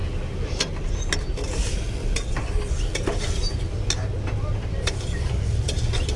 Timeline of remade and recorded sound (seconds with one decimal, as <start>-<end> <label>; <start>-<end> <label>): 0.0-6.2 recorded